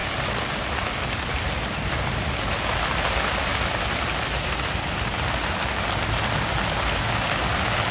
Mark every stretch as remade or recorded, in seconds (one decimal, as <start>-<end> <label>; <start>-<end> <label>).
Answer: 0.0-7.9 recorded